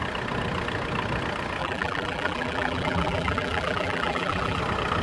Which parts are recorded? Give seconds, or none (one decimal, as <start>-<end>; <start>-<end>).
0.0-1.6; 4.6-5.0